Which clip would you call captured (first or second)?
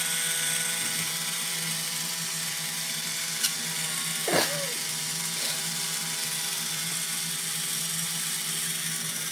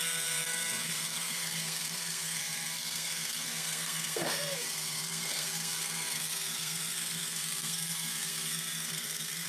first